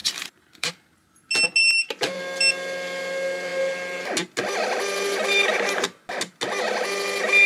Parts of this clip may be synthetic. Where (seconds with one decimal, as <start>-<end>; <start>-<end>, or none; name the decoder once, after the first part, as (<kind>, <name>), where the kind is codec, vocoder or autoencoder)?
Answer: 0.0-0.7 (vocoder, BigVGAN v2); 1.6-2.2